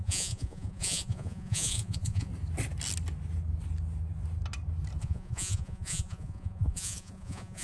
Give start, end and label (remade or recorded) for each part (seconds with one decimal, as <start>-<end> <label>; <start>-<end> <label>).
0.0-2.3 remade; 2.3-5.0 recorded; 5.0-7.6 remade